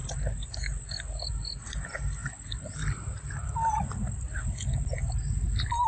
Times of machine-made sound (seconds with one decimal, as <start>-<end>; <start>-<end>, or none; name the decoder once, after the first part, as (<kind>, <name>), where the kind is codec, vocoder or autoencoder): none